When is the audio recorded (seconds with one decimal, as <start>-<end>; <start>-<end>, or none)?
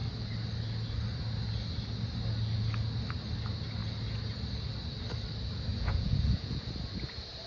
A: 0.0-5.7; 6.7-7.5